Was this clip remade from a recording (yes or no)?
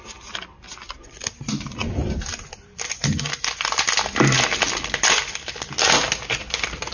no